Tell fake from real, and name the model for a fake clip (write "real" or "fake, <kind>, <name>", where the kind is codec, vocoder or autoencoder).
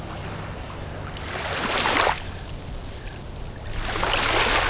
real